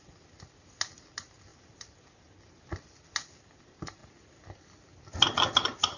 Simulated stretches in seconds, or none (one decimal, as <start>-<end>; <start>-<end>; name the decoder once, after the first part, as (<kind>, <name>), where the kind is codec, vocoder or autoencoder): 1.5-3.3 (vocoder, BigVGAN v2)